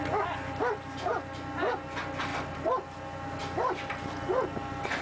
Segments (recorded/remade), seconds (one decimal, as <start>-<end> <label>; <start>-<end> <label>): 0.0-2.3 recorded; 2.3-3.0 remade; 3.0-5.0 recorded